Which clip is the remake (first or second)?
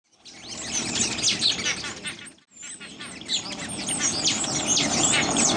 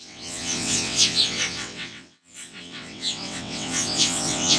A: second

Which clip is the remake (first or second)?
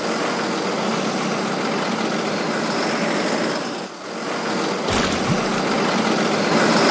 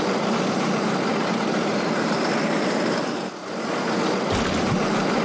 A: second